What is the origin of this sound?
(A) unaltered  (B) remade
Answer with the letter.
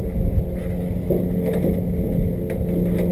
A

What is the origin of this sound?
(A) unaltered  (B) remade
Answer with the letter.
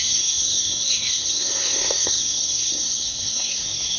B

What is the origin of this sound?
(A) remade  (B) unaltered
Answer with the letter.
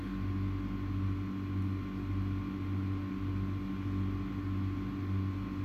B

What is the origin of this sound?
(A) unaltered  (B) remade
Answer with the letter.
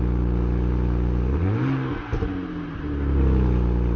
A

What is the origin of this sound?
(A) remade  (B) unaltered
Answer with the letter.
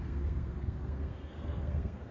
A